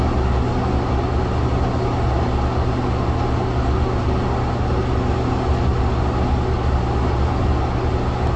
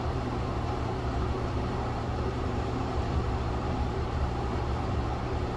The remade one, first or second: second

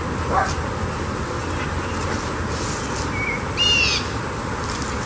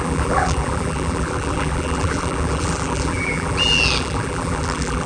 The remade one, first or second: second